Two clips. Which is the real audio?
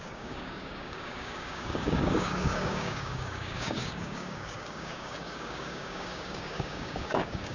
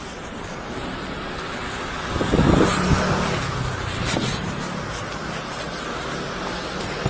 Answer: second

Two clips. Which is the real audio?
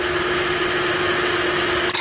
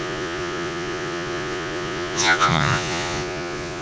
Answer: first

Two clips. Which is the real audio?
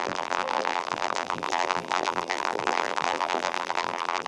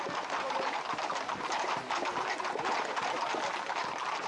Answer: second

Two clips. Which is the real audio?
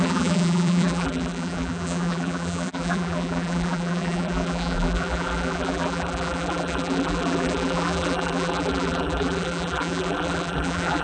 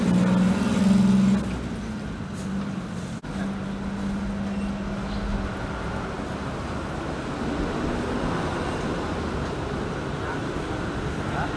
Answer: second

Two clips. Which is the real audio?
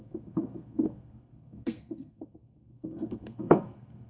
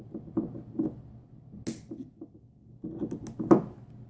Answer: second